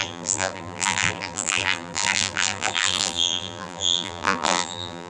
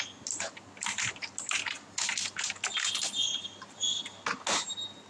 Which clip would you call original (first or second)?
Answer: second